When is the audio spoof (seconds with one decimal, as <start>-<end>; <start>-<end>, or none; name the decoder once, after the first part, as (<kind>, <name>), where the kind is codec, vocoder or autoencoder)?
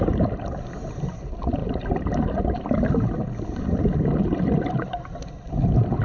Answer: none